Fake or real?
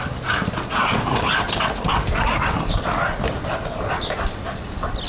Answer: real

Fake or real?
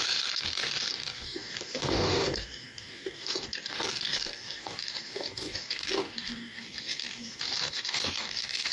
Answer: fake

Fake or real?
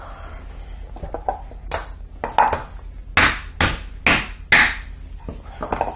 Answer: real